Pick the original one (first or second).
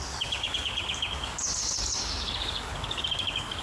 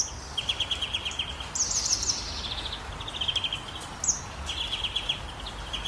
second